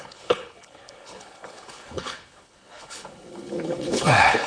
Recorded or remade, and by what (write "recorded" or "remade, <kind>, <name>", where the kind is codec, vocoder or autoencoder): remade, codec, HILCodec